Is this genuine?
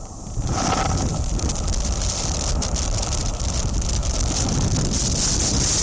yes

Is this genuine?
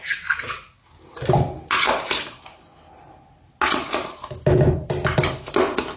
yes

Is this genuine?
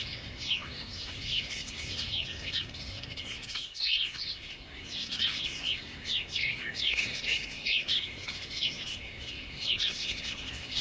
no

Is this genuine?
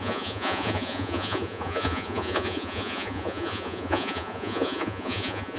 no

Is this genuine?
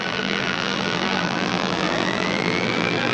no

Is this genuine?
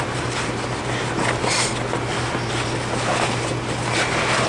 yes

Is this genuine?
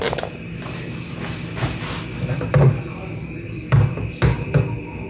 yes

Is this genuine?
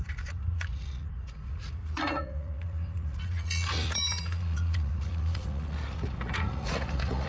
no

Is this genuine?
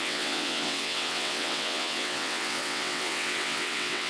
no